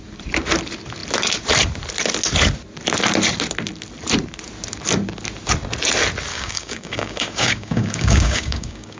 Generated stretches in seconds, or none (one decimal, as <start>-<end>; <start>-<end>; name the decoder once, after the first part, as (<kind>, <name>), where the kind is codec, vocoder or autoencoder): 6.3-9.0 (codec, DAC)